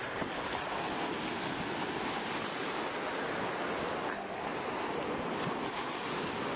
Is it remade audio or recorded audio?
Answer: recorded